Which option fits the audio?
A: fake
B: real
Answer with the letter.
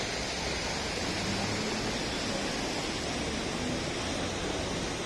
B